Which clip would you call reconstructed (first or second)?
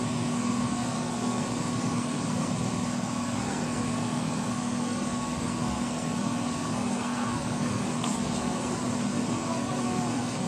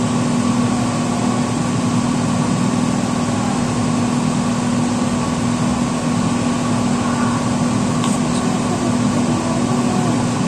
first